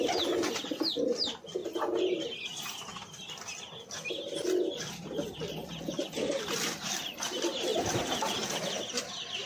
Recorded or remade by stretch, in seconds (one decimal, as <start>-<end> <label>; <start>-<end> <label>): 0.0-1.6 remade; 1.6-4.7 recorded; 4.7-7.7 remade; 7.7-8.9 recorded; 8.9-9.5 remade